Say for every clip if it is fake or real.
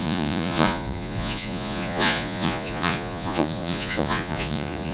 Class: fake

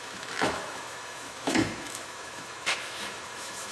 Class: fake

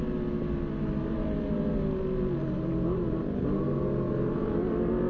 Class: real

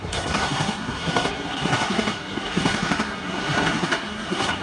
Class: fake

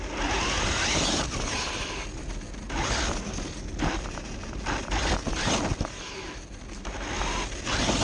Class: real